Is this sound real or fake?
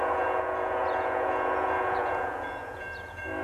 fake